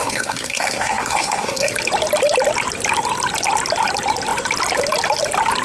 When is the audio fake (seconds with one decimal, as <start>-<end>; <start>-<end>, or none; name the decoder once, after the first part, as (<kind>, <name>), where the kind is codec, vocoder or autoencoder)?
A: 0.0-1.7 (codec, SNAC)

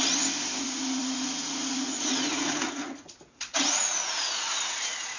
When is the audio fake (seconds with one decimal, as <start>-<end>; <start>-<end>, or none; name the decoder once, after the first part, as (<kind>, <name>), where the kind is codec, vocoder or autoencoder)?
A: 0.6-5.2 (vocoder, Vocos)